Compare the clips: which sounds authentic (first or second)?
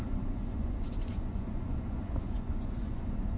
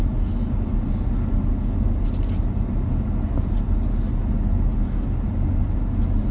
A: second